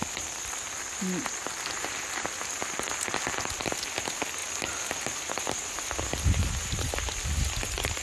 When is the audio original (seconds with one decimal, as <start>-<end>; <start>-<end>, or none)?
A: 0.0-8.0